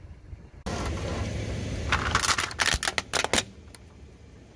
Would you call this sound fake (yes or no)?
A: no